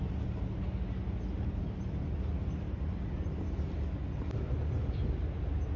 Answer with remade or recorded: recorded